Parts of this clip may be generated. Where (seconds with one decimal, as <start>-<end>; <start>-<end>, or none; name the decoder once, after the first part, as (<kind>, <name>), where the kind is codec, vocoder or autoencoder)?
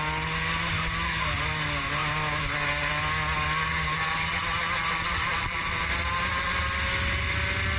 3.7-6.6 (vocoder, BigVGAN v2)